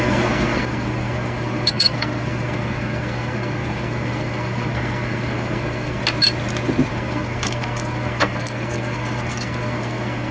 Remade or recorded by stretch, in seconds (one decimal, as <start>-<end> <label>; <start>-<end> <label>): 0.0-6.0 remade; 6.0-6.9 recorded; 6.9-10.3 remade